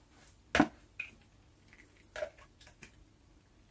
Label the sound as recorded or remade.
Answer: recorded